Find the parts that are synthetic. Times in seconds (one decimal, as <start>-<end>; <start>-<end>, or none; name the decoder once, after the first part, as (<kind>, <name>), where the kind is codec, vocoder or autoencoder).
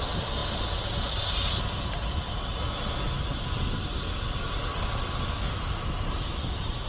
none